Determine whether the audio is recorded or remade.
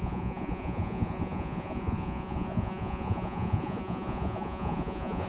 remade